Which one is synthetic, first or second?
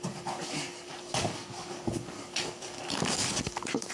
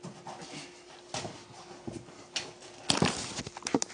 first